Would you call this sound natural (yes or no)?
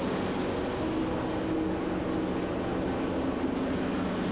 yes